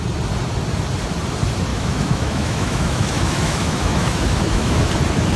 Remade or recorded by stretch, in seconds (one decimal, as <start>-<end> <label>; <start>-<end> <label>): 0.0-1.7 recorded; 1.7-4.9 remade; 4.9-5.4 recorded